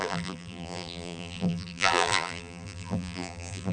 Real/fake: fake